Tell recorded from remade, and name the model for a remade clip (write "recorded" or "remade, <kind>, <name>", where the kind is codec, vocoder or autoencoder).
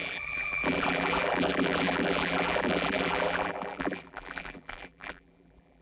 remade, vocoder, BigVGAN v2